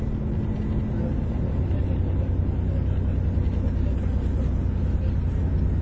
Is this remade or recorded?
recorded